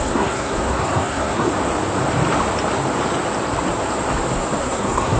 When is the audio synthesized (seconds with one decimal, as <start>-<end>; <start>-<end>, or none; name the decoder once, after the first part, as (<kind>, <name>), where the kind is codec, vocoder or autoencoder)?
0.0-1.5 (codec, SNAC); 4.6-5.2